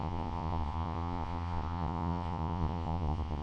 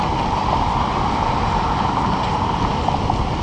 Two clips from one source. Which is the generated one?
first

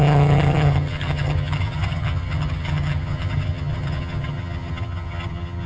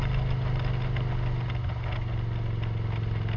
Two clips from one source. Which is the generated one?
first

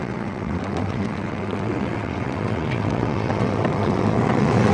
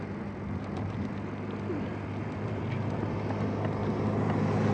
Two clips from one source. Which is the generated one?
first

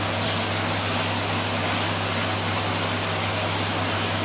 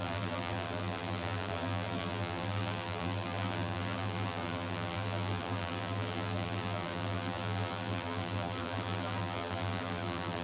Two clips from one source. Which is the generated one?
second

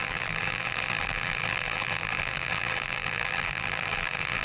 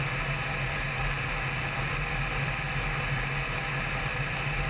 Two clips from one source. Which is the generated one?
first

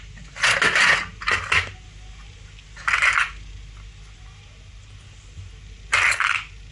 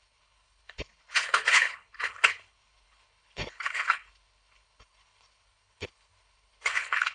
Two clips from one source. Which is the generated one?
second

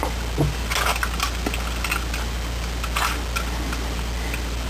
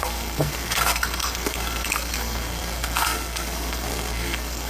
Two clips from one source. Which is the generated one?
second